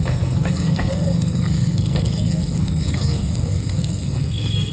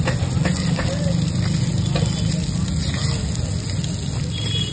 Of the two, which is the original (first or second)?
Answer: second